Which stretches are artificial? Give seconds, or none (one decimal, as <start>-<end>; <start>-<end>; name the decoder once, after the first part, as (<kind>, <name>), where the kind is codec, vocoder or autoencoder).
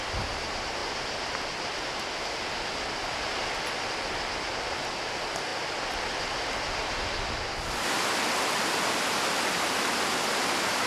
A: none